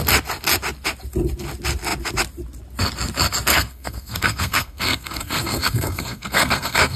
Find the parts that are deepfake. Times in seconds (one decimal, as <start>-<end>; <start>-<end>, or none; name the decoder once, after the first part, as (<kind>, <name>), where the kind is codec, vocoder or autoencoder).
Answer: 3.5-7.0 (codec, SNAC)